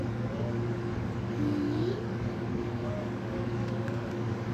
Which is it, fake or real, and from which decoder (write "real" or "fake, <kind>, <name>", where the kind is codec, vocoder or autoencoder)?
fake, codec, DAC